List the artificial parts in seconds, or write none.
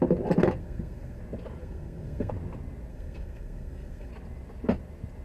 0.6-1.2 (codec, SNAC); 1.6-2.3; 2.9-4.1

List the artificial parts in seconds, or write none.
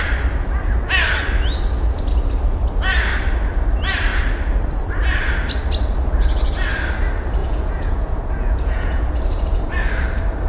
7.4-9.1 (vocoder, Vocos)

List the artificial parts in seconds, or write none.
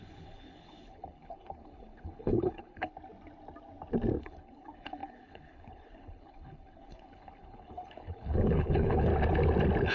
0.0-2.9 (codec, HILCodec); 4.2-9.1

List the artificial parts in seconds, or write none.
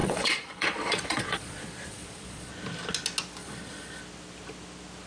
0.0-2.5 (vocoder, Vocos); 3.4-4.0